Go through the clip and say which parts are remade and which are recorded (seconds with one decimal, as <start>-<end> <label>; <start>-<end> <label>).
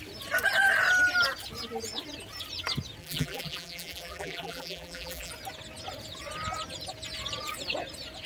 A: 0.0-3.0 recorded; 3.0-5.3 remade; 5.3-8.3 recorded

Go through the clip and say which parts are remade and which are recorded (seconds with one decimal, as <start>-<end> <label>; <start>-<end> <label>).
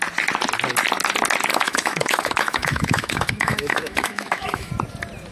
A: 0.0-1.5 recorded; 1.5-4.7 remade; 4.7-5.3 recorded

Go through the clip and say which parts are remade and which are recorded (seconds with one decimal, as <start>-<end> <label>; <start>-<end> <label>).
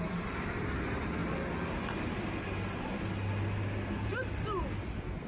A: 0.0-5.3 recorded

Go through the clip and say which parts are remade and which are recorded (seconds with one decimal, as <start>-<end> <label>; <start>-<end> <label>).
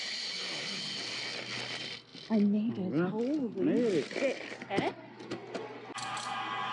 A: 0.0-6.7 recorded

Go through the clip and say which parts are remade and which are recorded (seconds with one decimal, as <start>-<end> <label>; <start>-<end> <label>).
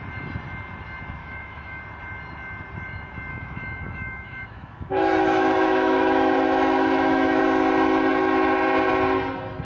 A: 0.0-1.2 recorded; 1.2-1.8 remade; 1.8-3.3 recorded; 3.3-7.4 remade; 7.4-9.6 recorded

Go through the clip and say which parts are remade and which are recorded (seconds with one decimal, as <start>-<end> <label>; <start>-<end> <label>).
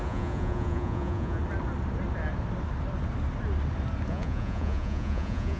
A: 0.0-1.4 remade; 1.4-4.1 recorded; 4.1-5.6 remade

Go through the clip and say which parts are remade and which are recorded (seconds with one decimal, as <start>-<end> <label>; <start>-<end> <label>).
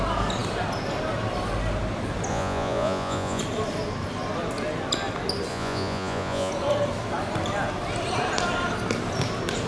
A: 0.0-2.3 recorded; 2.3-3.4 remade; 3.4-5.5 recorded; 5.5-6.5 remade; 6.5-9.7 recorded